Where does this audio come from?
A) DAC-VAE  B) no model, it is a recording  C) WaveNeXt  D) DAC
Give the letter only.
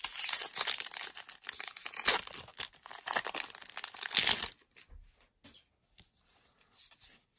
B